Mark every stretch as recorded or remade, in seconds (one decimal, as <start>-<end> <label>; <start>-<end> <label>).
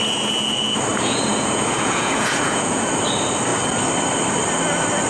0.0-0.9 recorded; 0.9-2.9 remade; 2.9-5.1 recorded